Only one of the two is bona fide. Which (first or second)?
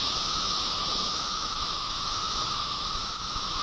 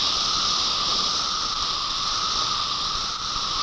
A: second